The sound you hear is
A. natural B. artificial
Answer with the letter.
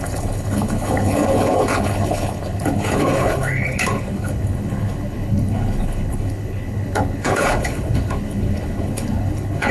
B